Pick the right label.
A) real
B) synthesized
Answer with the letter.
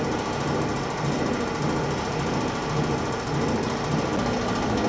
A